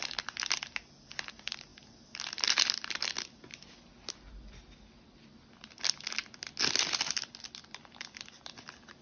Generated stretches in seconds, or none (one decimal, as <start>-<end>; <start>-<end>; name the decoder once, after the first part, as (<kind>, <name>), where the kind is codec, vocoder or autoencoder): none